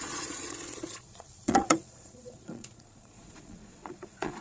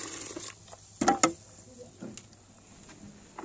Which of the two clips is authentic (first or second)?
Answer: second